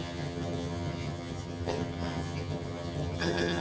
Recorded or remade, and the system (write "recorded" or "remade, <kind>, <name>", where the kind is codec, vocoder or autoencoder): remade, vocoder, HiFi-GAN